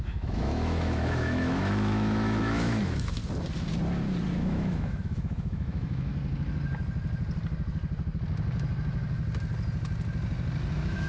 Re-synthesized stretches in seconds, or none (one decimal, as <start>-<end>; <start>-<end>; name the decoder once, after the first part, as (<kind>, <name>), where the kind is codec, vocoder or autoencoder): 0.0-3.2 (autoencoder, DAC-VAE); 4.3-6.1; 10.7-11.1